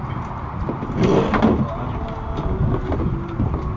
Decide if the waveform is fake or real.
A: real